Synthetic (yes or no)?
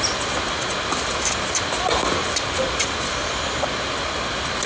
no